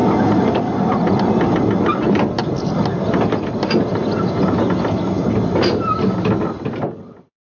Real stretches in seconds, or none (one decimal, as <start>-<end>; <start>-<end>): 0.0-7.5